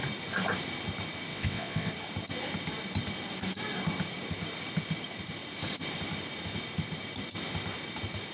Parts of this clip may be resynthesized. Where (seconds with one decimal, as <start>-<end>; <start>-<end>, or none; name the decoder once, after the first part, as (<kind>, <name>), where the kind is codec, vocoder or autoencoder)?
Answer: 1.3-1.9 (vocoder, WaveNeXt)